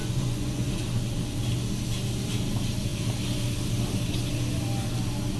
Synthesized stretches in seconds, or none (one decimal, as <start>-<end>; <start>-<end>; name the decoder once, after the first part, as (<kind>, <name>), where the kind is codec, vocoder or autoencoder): 0.0-0.7 (vocoder, Vocos)